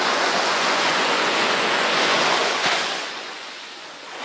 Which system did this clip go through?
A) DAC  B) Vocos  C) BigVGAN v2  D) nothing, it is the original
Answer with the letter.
B